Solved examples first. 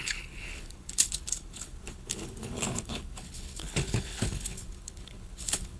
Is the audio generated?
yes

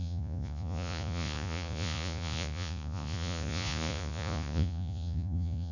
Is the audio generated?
yes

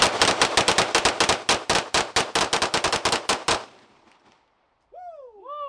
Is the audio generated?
no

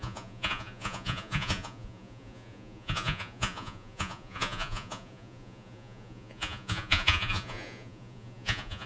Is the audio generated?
yes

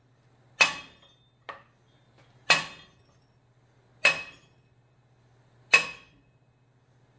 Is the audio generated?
no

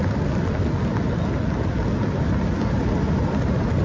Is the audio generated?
no